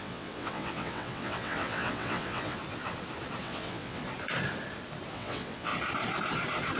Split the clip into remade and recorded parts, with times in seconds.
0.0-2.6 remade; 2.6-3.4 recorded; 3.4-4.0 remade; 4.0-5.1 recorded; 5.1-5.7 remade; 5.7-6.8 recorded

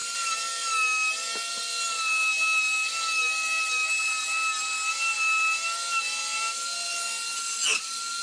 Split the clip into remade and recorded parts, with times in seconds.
0.0-8.2 recorded

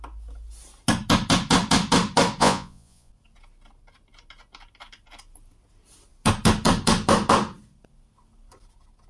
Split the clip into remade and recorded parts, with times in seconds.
0.0-2.4 recorded; 2.4-3.1 remade; 3.1-9.1 recorded

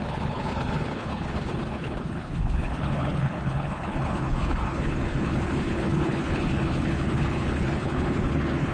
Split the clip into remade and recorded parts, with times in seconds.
0.0-8.7 remade